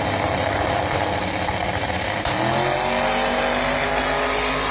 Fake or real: real